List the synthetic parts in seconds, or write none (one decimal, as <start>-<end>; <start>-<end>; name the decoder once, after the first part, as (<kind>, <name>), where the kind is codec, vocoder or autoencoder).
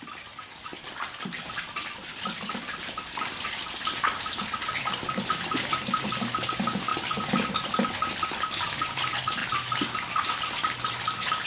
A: none